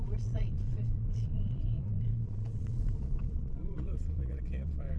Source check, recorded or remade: remade